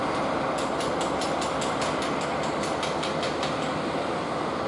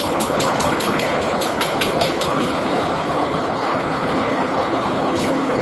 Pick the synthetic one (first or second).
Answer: second